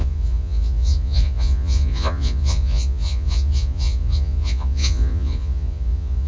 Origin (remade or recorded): remade